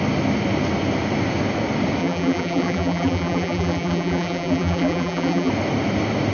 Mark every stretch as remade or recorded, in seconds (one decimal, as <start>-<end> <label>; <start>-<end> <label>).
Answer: 0.0-2.0 recorded; 2.0-5.5 remade; 5.5-6.3 recorded